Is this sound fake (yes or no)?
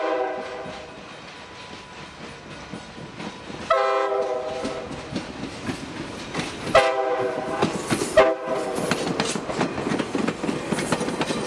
no